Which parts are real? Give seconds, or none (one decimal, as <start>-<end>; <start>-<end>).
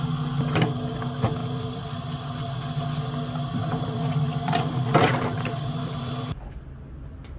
0.0-1.4; 2.0-3.6; 6.6-7.4